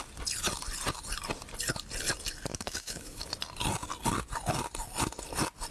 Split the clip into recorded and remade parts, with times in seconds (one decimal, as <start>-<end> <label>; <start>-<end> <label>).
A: 0.0-2.5 recorded; 2.5-3.3 remade; 3.3-5.7 recorded